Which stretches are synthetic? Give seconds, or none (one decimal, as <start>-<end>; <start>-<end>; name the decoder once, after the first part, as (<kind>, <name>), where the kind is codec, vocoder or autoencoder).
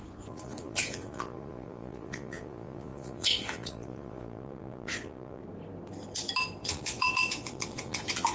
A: 0.0-5.4 (vocoder, Vocos); 6.6-8.3